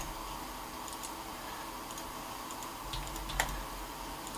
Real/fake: real